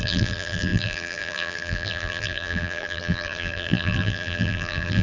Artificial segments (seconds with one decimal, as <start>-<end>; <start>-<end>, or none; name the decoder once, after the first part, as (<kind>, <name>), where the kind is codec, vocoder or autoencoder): 0.0-5.0 (vocoder, BigVGAN v2)